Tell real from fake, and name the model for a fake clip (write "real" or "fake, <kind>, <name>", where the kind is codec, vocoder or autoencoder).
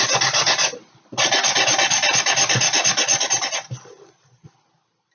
real